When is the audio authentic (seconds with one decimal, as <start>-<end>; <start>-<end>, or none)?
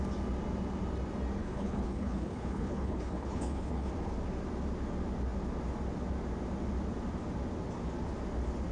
0.0-1.4; 3.9-8.7